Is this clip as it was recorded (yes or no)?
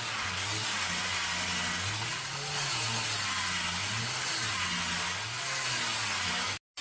yes